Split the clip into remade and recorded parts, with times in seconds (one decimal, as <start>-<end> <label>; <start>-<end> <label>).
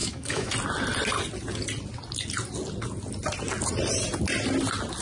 0.0-0.5 remade; 0.5-5.0 recorded